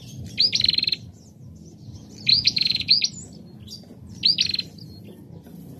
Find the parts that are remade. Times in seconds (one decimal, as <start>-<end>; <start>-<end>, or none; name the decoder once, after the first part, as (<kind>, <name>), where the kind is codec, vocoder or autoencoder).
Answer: 2.3-3.0 (vocoder, Vocos)